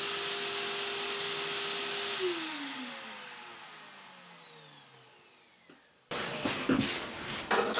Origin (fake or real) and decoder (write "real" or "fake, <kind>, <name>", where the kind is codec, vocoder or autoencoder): real